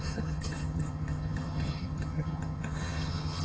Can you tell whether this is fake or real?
fake